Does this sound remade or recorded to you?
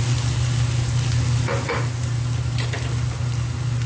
recorded